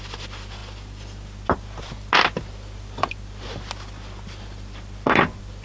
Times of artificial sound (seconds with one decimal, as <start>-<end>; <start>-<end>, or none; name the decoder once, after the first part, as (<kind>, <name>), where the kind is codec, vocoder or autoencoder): none